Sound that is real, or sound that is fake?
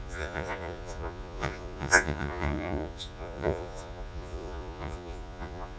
fake